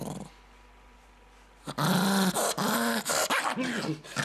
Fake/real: real